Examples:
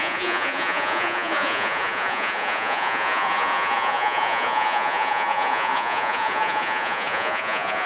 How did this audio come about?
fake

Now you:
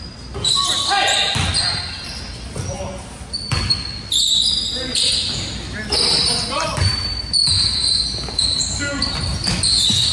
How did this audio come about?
real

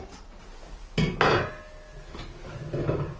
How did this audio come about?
real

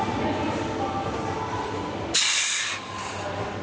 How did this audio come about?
real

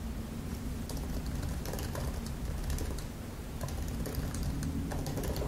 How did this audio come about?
real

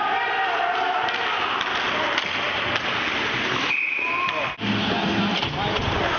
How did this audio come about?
real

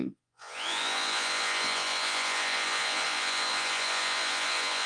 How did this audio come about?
fake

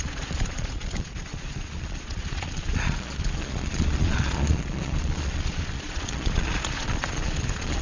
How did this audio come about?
fake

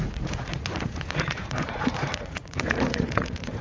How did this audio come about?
fake